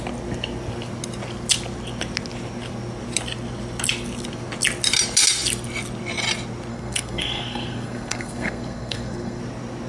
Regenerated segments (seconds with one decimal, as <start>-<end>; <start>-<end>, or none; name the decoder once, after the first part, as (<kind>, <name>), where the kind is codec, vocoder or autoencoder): 6.7-9.4 (codec, SNAC)